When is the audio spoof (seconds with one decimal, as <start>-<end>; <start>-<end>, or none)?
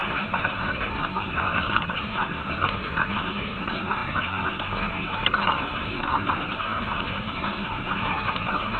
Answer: 0.0-8.8